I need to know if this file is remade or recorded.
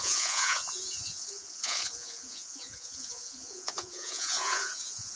remade